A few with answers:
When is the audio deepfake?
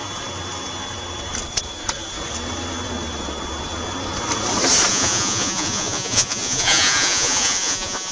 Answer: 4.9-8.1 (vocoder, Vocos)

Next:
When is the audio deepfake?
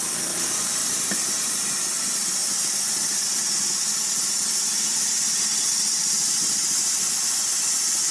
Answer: 0.8-1.6 (vocoder, BigVGAN v2)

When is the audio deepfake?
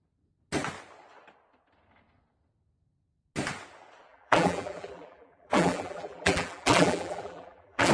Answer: 4.1-7.9 (vocoder, BigVGAN v2)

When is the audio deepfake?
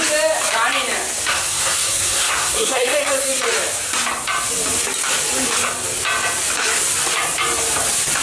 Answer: 1.3-3.3 (codec, SNAC)